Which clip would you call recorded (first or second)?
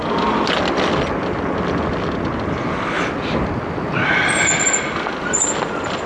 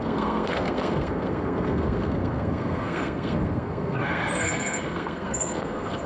first